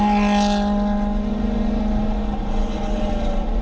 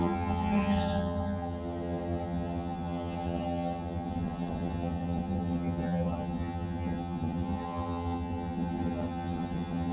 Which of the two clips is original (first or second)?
first